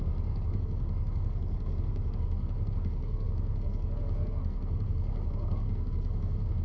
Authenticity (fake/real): fake